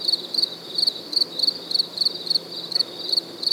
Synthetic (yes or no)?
no